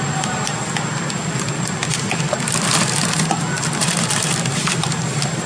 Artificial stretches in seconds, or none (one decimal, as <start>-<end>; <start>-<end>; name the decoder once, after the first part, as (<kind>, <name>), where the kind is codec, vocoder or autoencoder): 0.0-0.5 (vocoder, BigVGAN v2); 3.8-5.5